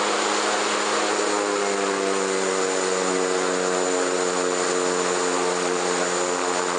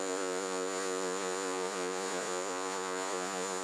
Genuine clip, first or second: first